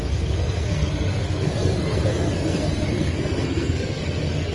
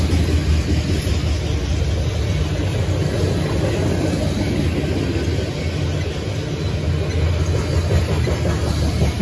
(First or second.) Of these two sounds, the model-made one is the first